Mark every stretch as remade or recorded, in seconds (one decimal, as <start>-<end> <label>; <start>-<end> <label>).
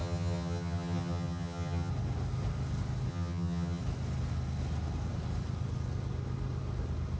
0.0-1.9 remade; 1.9-3.1 recorded; 3.1-3.8 remade; 3.8-7.2 recorded